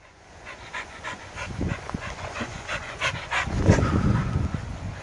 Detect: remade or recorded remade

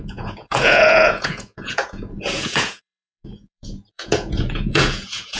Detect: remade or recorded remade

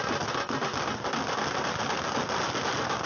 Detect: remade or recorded recorded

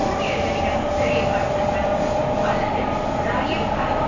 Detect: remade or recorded recorded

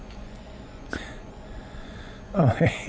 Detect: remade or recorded remade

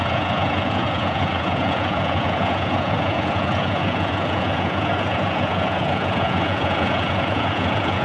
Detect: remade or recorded remade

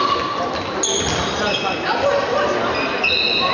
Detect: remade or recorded recorded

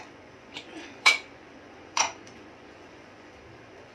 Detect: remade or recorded remade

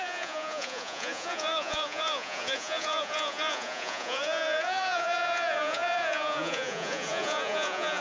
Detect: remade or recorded remade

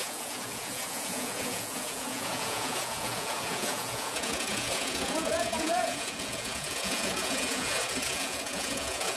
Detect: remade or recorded remade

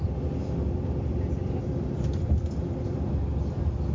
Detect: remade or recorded recorded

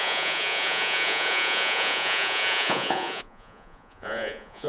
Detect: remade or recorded remade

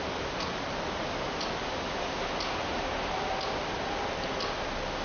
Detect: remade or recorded recorded